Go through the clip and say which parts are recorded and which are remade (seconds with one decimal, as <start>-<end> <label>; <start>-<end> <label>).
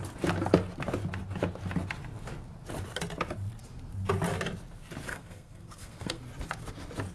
0.0-5.1 recorded; 5.1-6.2 remade; 6.2-7.1 recorded